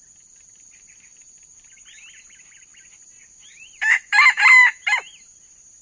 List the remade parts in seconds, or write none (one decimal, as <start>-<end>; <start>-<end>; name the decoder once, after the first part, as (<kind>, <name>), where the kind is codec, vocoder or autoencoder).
2.7-4.5 (vocoder, BigVGAN v2)